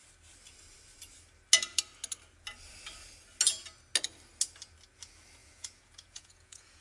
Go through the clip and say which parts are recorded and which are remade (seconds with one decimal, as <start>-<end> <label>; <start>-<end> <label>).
0.0-5.4 recorded; 5.4-6.8 remade